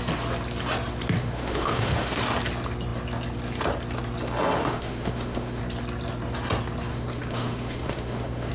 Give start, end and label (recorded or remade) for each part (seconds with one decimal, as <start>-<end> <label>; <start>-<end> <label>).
0.0-1.2 recorded; 1.2-2.2 remade; 2.2-4.6 recorded; 4.6-5.6 remade; 5.6-6.9 recorded; 6.9-8.5 remade